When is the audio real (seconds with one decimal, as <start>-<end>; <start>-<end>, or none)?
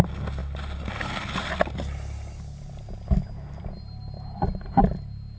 0.0-5.4